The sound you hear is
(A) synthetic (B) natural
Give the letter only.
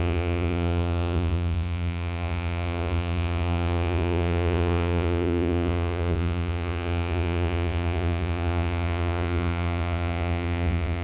A